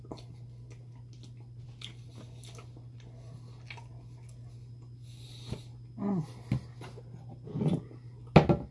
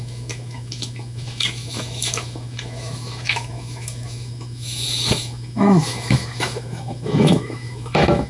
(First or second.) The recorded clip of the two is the first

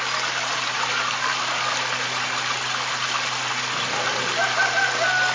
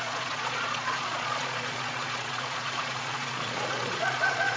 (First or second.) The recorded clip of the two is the first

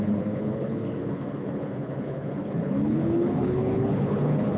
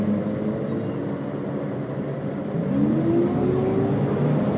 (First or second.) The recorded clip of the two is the second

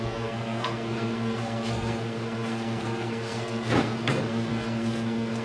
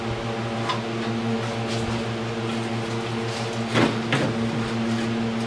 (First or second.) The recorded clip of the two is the second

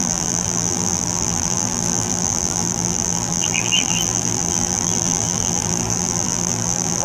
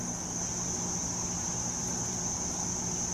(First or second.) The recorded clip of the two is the second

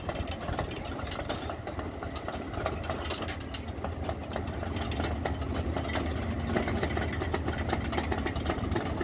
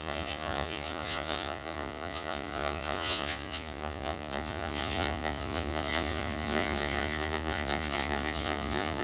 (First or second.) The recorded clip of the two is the first